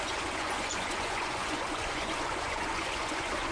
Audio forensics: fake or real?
fake